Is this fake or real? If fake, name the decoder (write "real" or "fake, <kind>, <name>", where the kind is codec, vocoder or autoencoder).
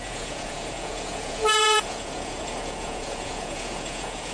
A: fake, vocoder, Vocos